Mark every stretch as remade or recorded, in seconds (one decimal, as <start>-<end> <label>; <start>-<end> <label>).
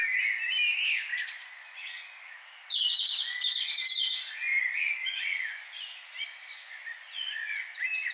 0.0-1.1 recorded; 1.1-2.3 remade; 2.3-4.5 recorded; 4.5-8.1 remade